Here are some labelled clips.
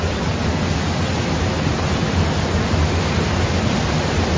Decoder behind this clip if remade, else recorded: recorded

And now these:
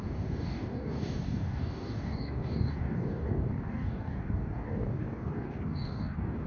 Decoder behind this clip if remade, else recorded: remade, codec, DAC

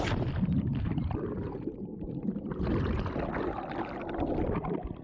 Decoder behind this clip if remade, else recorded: recorded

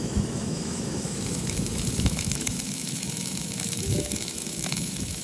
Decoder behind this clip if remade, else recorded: remade, autoencoder, DAC-VAE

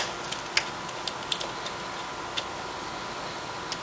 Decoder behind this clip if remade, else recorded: recorded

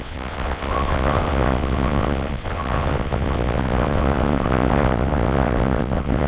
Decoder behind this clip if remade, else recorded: remade, vocoder, WaveNeXt